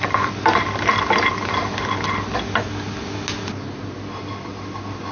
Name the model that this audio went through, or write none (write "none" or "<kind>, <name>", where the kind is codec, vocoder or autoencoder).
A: none